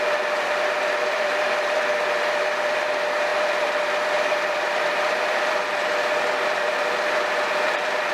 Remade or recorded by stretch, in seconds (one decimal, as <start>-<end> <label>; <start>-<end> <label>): 0.0-8.1 remade